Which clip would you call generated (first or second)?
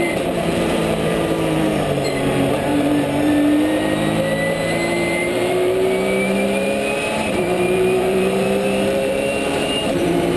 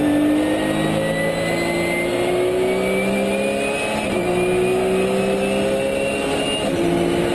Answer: first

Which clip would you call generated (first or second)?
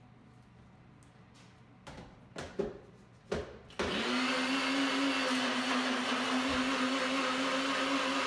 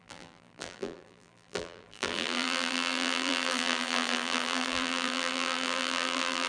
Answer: second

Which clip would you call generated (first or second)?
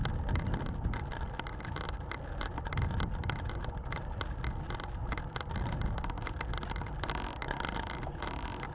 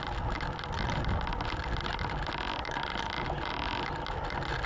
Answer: first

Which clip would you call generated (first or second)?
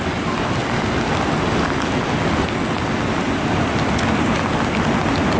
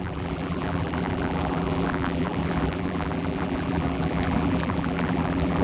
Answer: second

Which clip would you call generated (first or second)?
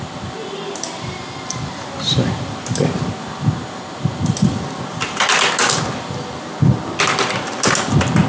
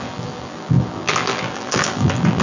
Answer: second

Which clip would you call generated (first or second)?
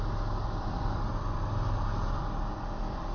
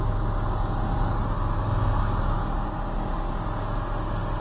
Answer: first